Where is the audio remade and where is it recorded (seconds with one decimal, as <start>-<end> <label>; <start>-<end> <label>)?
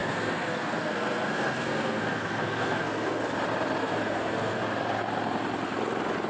0.0-3.2 remade; 3.2-3.8 recorded; 3.8-4.6 remade; 4.6-6.3 recorded